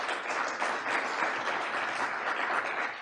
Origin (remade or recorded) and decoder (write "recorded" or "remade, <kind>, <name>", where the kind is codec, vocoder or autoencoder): recorded